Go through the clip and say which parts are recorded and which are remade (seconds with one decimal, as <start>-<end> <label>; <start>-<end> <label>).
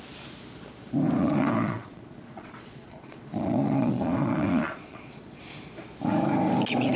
0.0-1.2 recorded; 1.2-5.4 remade; 5.4-7.0 recorded